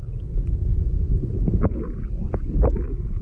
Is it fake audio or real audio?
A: real